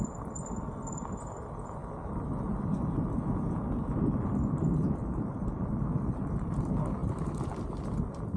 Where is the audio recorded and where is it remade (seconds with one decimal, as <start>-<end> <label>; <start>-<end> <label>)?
0.0-7.0 recorded; 7.0-7.5 remade; 7.5-8.4 recorded